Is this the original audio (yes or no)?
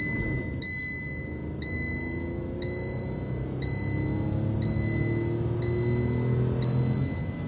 yes